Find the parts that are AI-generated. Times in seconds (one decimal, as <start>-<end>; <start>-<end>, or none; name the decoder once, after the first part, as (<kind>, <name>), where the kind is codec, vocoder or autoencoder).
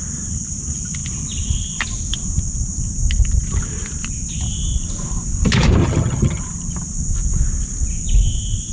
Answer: 5.8-6.4 (vocoder, HiFi-GAN)